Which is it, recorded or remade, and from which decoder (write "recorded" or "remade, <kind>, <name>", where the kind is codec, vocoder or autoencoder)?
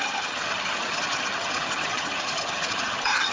remade, vocoder, HiFi-GAN